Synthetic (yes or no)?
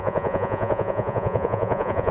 yes